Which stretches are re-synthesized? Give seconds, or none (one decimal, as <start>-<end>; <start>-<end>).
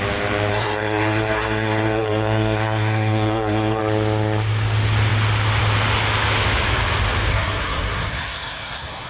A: 0.5-3.8; 7.3-9.1